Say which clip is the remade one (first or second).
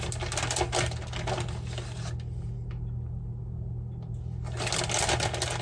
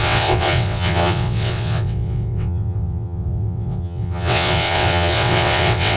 second